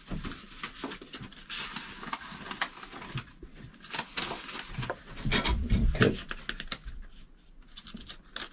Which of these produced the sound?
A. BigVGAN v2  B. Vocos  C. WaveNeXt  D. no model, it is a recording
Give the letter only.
D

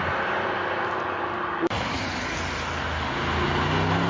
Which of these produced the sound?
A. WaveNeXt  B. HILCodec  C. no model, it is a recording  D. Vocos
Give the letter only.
C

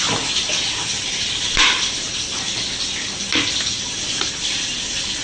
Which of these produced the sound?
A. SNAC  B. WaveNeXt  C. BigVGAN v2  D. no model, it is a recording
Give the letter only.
D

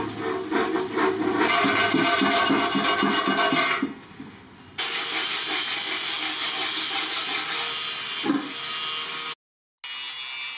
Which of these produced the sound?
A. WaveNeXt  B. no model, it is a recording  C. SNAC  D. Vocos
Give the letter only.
B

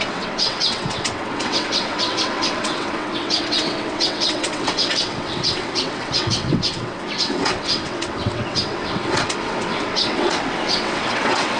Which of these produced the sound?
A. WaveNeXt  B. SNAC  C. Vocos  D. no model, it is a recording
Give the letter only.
A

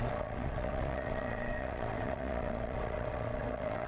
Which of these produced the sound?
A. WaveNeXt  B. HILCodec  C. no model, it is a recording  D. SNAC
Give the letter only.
A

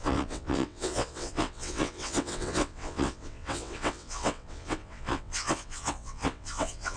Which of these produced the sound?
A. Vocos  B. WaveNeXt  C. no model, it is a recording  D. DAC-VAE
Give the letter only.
B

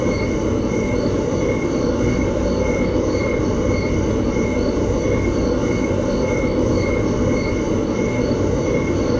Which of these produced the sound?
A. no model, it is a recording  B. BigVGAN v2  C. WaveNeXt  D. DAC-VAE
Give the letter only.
A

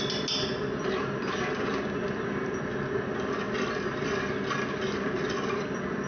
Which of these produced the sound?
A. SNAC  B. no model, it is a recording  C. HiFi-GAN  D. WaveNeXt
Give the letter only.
B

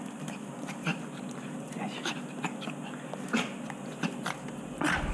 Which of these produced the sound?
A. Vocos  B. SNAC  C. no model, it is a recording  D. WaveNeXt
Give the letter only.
C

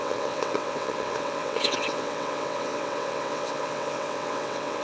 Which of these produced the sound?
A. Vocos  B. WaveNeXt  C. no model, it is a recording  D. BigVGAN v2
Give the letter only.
B